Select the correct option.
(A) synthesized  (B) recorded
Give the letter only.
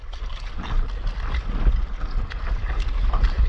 B